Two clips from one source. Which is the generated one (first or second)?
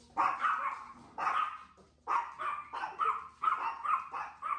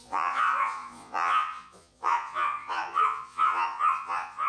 second